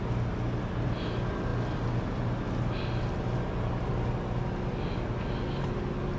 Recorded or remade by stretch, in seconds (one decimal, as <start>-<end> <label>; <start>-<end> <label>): 0.0-6.2 recorded